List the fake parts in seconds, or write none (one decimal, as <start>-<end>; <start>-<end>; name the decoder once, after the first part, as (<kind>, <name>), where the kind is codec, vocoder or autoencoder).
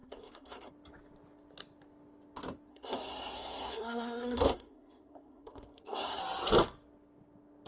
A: 0.0-0.7 (codec, SNAC); 2.7-6.2